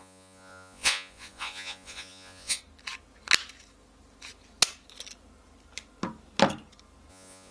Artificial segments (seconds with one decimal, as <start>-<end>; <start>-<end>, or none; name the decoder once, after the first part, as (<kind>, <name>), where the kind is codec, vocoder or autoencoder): 0.0-2.6 (vocoder, Vocos); 7.1-7.5